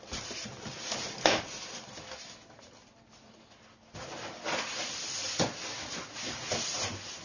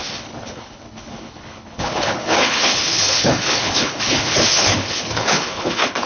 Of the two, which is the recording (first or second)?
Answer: first